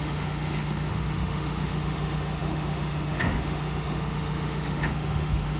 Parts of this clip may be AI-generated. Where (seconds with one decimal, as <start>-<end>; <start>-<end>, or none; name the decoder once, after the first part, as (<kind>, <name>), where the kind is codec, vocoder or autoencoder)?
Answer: 0.0-5.6 (autoencoder, DAC-VAE)